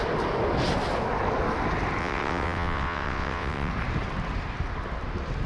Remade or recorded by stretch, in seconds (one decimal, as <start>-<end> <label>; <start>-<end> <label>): 0.0-2.0 recorded; 2.0-3.7 remade; 3.7-5.5 recorded